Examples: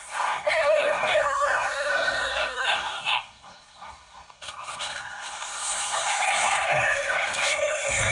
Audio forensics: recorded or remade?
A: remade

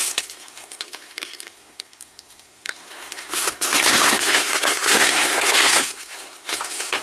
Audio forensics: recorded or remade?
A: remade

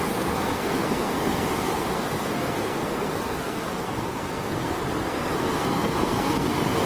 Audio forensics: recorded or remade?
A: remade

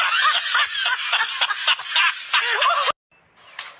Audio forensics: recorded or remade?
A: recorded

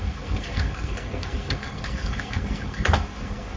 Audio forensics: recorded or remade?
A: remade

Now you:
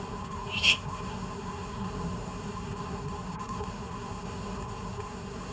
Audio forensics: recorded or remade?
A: remade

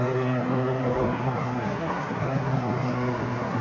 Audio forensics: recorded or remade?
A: remade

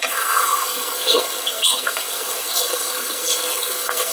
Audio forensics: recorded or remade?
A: remade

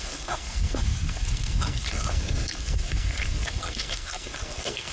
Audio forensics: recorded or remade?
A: remade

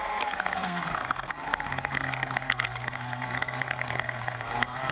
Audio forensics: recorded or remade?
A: remade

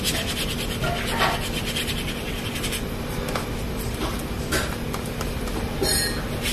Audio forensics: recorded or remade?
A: recorded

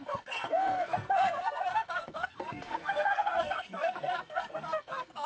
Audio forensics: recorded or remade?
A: remade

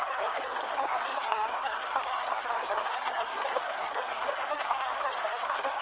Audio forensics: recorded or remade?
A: remade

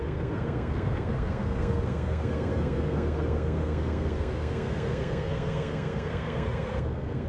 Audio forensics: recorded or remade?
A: remade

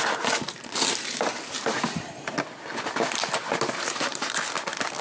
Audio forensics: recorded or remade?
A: recorded